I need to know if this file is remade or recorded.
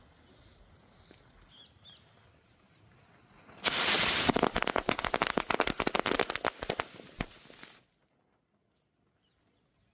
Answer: recorded